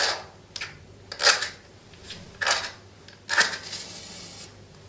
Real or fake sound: real